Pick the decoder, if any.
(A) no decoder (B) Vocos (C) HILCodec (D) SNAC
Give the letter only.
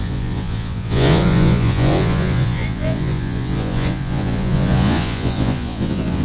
B